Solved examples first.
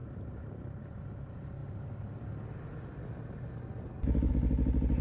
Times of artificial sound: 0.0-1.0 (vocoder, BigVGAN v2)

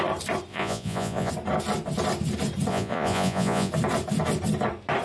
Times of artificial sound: 0.5-1.3 (vocoder, Vocos); 2.7-3.7

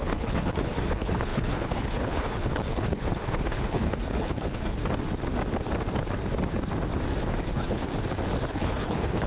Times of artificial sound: 0.0-4.8 (codec, HILCodec); 7.4-7.9; 8.5-9.3

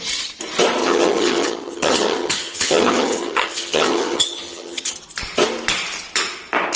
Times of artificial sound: 0.8-4.9 (vocoder, HiFi-GAN)

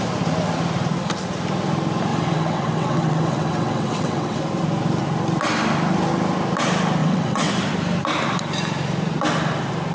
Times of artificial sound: 2.1-4.4 (vocoder, WaveNeXt); 7.0-7.5

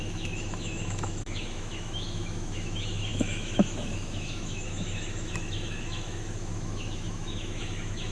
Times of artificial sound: 0.0-8.1 (autoencoder, DAC-VAE)

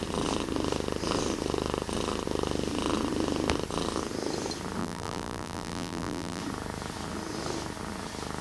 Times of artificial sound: 4.8-6.4 (vocoder, BigVGAN v2)